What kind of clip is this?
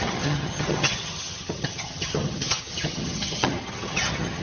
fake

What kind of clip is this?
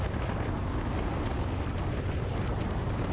real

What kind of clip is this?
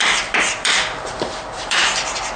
fake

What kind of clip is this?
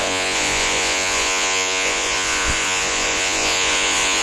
fake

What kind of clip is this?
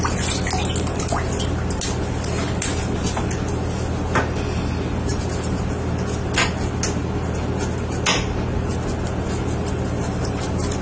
real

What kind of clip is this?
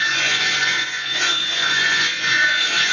fake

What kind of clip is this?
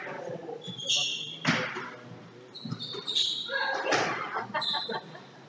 real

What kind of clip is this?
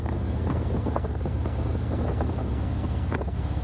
fake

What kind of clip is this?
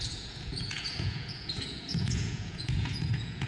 fake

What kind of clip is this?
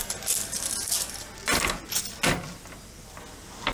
real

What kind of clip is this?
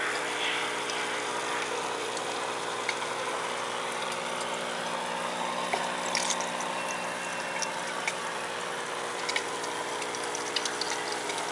real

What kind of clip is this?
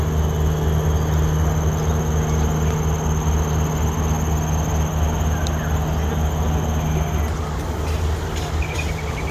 real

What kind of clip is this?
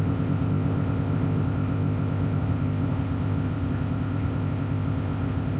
fake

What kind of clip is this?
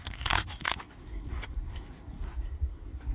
fake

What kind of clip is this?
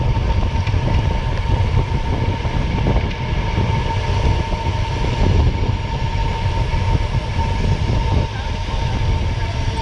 real